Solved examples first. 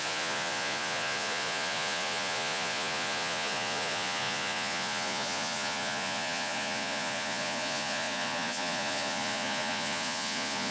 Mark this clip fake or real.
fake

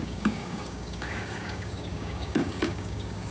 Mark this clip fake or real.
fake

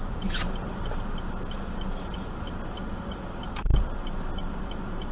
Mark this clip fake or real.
real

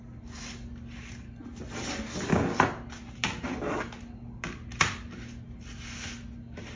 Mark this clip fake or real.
real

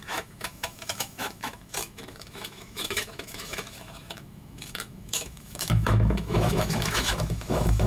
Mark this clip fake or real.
fake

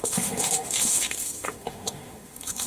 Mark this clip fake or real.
fake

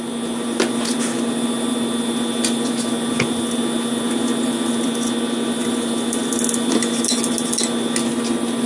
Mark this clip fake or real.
real